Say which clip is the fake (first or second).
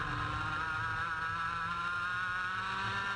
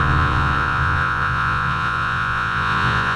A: second